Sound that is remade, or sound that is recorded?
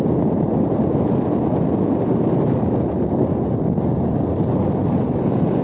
recorded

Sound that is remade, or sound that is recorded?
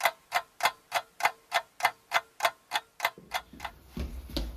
recorded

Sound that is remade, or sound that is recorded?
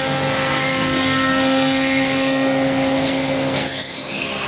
remade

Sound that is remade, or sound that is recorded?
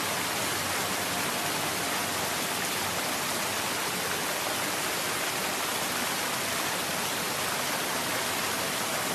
recorded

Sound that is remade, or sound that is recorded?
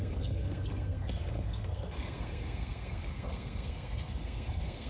remade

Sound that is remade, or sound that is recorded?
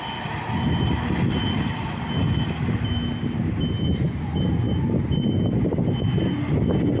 recorded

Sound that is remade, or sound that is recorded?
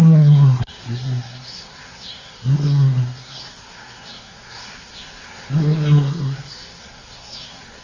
remade